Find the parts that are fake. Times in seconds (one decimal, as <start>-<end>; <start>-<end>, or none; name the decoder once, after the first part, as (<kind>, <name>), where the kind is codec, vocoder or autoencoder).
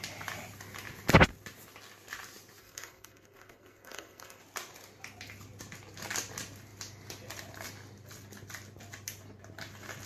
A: 2.6-4.4 (codec, SNAC)